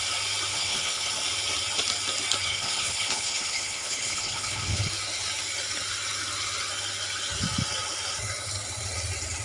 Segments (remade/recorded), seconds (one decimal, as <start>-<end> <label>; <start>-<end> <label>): 0.0-0.5 recorded; 0.5-1.1 remade; 1.1-2.4 recorded; 2.4-4.9 remade; 4.9-9.4 recorded